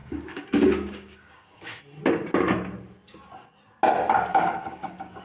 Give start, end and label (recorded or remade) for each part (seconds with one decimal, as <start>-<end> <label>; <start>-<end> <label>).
0.0-1.8 remade; 1.8-4.3 recorded; 4.3-5.2 remade